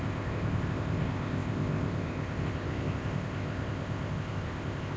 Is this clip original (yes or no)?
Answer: no